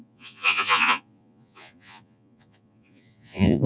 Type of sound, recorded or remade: remade